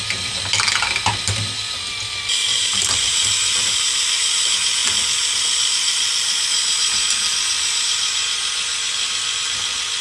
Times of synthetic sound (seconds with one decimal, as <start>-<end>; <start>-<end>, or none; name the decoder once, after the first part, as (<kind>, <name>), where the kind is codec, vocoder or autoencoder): 2.5-4.2 (vocoder, BigVGAN v2)